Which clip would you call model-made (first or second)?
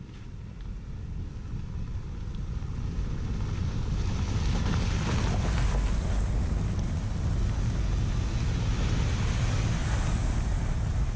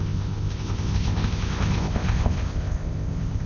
second